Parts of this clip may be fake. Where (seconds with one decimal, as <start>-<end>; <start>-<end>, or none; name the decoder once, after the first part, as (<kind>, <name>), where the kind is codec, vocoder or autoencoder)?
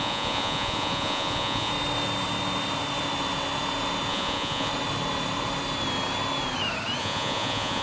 0.0-1.7 (vocoder, Vocos); 4.1-4.7; 7.0-7.8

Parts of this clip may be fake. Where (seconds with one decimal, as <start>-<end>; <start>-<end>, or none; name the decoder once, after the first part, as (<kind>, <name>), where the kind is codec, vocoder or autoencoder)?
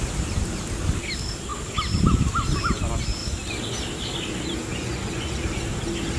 4.7-5.3 (vocoder, Vocos)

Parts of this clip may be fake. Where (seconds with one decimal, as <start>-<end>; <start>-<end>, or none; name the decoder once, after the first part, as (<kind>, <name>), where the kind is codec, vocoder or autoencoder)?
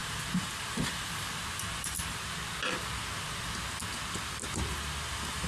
0.0-2.2 (vocoder, BigVGAN v2)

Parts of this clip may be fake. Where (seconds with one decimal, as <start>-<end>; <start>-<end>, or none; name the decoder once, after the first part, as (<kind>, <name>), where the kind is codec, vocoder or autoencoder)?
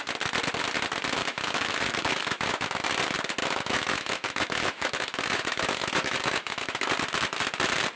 1.2-2.9 (autoencoder, DAC-VAE); 3.4-6.9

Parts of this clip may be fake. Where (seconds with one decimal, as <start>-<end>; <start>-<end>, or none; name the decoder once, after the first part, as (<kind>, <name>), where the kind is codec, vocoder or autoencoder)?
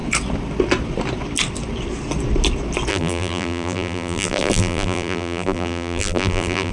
2.9-6.7 (vocoder, BigVGAN v2)